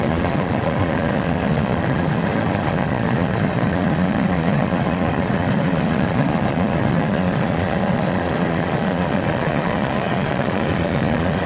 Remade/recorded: remade